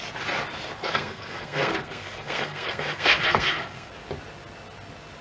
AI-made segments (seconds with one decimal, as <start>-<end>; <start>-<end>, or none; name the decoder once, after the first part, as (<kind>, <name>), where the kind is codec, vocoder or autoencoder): 0.8-3.9 (codec, SNAC)